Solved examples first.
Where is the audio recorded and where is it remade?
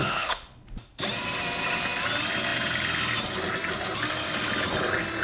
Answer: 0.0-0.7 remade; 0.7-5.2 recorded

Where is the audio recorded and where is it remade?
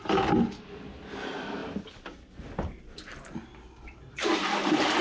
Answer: 0.0-5.0 recorded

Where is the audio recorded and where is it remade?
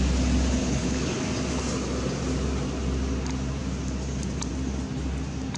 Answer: 0.0-0.6 recorded; 0.6-1.2 remade; 1.2-5.6 recorded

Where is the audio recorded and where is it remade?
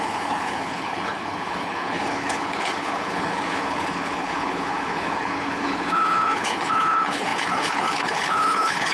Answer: 0.0-8.9 remade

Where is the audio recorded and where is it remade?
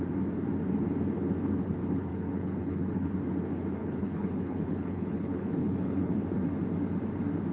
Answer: 0.0-2.1 recorded; 2.1-3.1 remade; 3.1-3.8 recorded; 3.8-6.1 remade; 6.1-7.5 recorded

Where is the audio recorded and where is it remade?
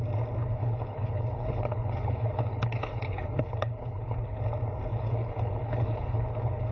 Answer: 0.0-0.4 recorded; 0.4-4.4 remade; 4.4-4.9 recorded; 4.9-6.7 remade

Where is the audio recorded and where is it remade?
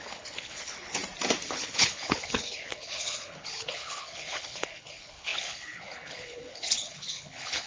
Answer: 0.0-1.0 remade; 1.0-1.5 recorded; 1.5-7.7 remade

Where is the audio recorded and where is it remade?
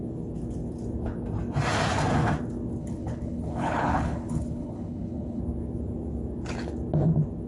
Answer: 0.0-2.8 recorded; 2.8-5.4 remade; 5.4-7.5 recorded